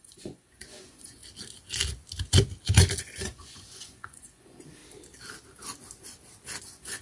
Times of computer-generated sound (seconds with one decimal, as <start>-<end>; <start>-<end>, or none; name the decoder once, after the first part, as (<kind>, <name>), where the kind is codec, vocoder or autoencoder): 0.0-1.2 (vocoder, Vocos); 3.0-4.8; 6.6-7.0